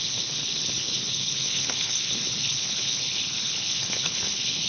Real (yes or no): no